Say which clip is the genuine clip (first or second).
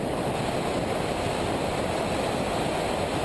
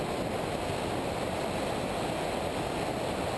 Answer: second